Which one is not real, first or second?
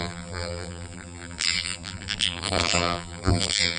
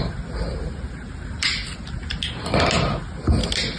first